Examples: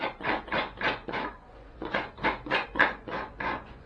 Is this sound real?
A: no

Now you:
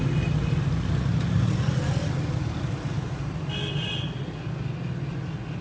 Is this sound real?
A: yes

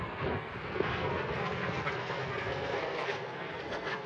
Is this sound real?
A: no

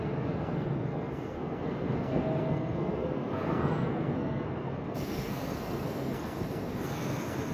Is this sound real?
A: no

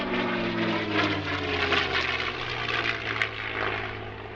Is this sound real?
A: yes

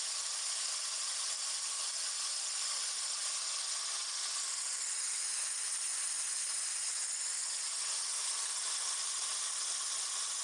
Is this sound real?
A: yes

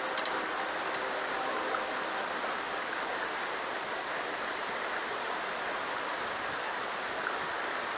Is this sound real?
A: yes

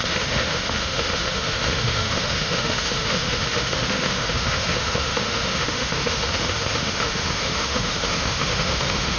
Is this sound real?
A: no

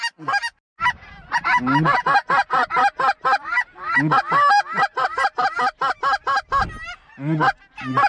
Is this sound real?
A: yes